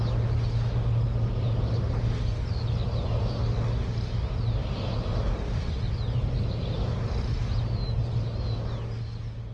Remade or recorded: recorded